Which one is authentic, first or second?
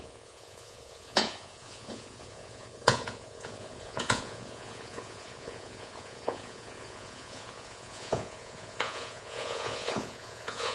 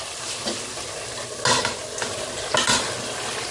second